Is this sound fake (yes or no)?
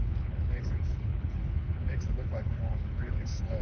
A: yes